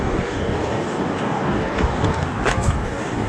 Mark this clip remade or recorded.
remade